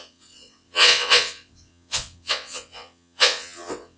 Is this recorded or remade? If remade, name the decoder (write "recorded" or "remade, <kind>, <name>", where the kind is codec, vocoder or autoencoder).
remade, vocoder, WaveNeXt